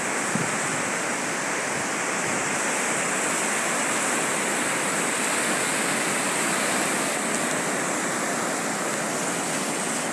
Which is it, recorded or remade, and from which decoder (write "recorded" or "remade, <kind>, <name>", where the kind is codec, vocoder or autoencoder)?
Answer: recorded